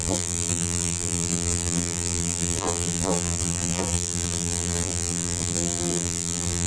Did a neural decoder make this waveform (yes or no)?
yes